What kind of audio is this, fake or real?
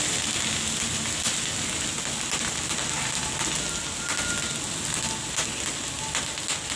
real